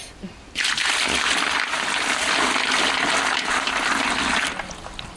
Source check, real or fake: real